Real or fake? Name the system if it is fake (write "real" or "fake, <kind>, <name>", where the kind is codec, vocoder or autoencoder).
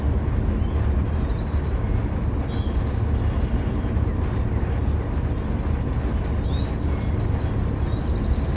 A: real